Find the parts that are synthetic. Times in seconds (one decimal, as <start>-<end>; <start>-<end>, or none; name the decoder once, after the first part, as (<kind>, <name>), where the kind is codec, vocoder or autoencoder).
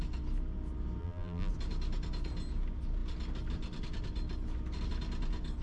1.0-1.5 (vocoder, BigVGAN v2)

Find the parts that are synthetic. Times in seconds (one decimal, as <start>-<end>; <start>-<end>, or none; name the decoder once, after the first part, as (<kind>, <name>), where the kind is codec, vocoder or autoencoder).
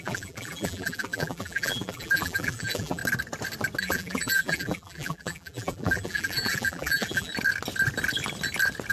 0.0-3.0 (vocoder, BigVGAN v2); 3.8-7.3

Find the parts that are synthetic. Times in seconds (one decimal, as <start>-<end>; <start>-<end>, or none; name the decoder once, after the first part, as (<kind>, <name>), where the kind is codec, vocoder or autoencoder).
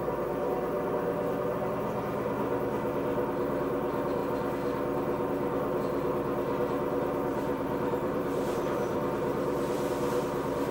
7.3-9.9 (vocoder, BigVGAN v2)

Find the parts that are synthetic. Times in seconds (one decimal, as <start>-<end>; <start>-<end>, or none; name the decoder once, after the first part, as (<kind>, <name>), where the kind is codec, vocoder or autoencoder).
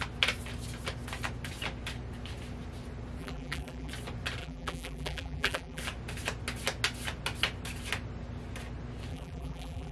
3.2-3.9 (vocoder, BigVGAN v2); 4.4-5.8; 9.1-9.9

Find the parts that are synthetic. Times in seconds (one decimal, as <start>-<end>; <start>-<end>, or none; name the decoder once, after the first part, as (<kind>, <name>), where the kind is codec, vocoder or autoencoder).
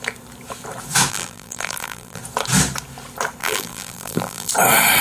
1.1-2.2 (vocoder, BigVGAN v2); 3.4-4.5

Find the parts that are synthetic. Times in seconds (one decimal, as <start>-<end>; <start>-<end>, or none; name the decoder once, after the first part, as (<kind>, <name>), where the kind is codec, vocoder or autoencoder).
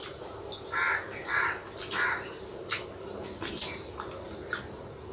1.2-4.3 (vocoder, BigVGAN v2)